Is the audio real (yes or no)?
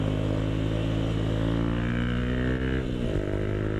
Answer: yes